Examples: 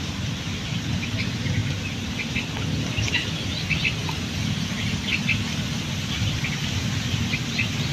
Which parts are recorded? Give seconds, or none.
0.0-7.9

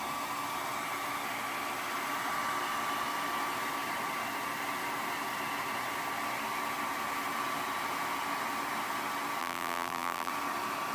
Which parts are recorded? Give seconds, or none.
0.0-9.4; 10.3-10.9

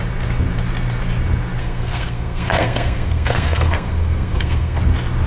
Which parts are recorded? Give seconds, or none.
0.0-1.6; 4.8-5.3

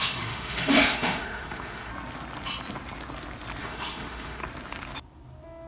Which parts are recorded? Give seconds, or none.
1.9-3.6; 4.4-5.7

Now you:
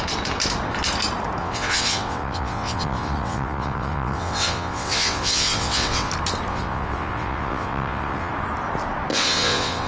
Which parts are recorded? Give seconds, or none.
0.0-1.4; 6.1-6.5; 8.3-9.1

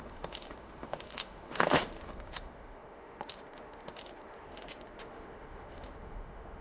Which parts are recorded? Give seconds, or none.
none